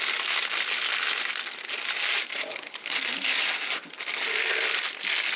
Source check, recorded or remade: recorded